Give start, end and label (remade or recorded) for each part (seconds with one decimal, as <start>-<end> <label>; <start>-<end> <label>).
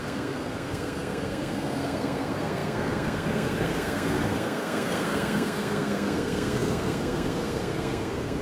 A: 0.0-8.4 remade